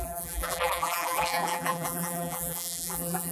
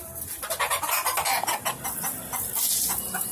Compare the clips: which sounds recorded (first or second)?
second